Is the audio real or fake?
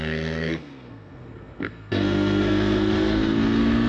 fake